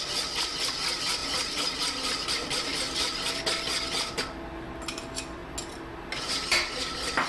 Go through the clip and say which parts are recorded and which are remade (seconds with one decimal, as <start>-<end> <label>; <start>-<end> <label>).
0.0-1.2 recorded; 1.2-3.3 remade; 3.3-7.3 recorded